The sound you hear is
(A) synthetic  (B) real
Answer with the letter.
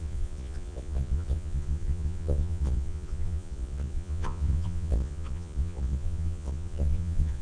A